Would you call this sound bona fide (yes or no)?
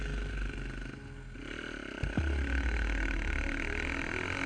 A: yes